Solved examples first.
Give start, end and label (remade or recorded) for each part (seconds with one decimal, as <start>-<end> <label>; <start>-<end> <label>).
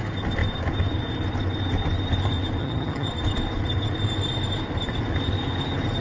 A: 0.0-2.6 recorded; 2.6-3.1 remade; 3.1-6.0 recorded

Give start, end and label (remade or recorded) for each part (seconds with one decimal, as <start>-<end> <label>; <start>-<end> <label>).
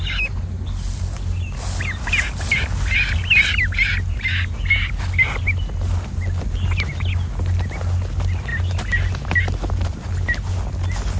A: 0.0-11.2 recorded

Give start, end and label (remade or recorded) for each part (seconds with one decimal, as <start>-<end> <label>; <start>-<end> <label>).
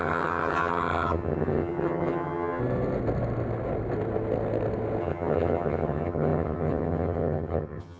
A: 0.0-2.6 remade; 2.6-5.0 recorded; 5.0-8.0 remade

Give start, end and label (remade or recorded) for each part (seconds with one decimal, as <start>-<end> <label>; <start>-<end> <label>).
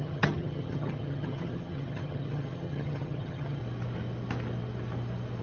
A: 0.0-3.6 remade; 3.6-5.4 recorded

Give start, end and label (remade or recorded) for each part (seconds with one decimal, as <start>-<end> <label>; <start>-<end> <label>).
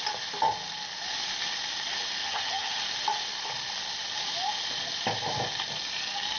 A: 0.0-2.2 recorded; 2.2-2.8 remade; 2.8-6.4 recorded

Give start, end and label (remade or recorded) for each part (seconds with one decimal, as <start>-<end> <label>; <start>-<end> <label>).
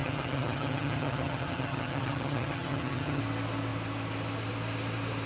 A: 0.0-3.2 remade; 3.2-5.3 recorded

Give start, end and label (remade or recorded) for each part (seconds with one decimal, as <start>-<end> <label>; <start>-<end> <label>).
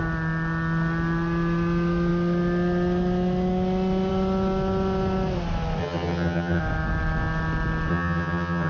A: 0.0-5.8 recorded; 5.8-6.6 remade; 6.6-7.9 recorded; 7.9-8.7 remade